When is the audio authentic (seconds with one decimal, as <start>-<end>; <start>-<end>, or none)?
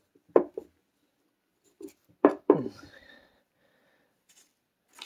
0.0-1.5; 4.6-5.1